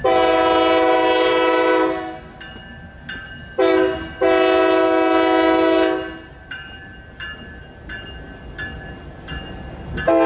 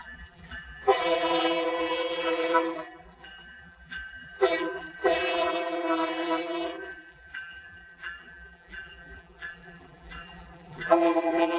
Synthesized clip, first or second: second